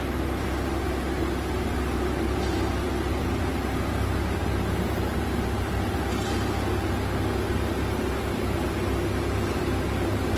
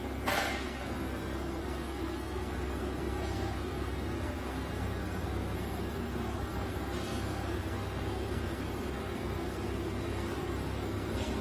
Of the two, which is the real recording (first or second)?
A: first